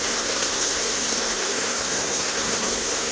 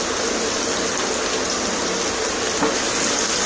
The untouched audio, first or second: second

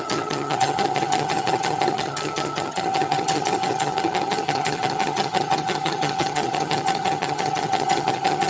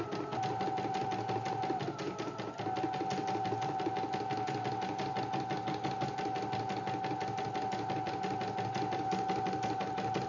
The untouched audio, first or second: second